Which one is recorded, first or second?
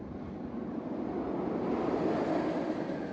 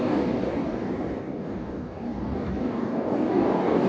first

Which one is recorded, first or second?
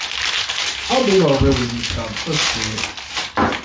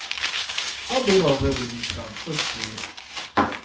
first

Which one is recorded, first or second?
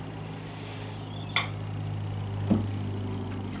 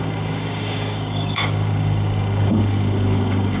first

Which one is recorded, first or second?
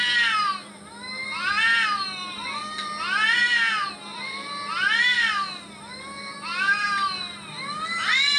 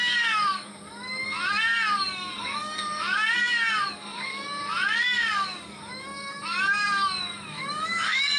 first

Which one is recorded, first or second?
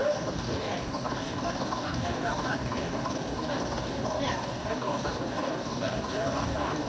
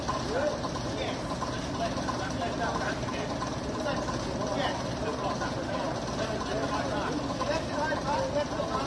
second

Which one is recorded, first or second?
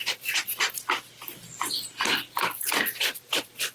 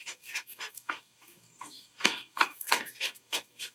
first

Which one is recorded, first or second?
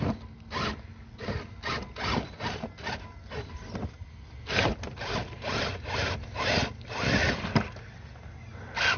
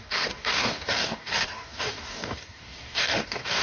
first